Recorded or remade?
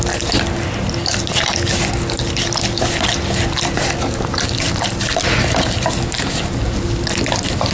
recorded